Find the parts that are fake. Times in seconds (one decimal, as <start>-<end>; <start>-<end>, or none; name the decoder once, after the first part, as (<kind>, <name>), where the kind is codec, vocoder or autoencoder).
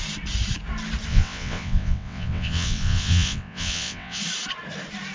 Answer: 1.1-4.2 (vocoder, WaveNeXt)